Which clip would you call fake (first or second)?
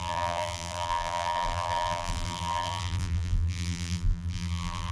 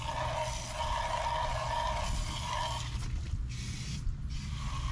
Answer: first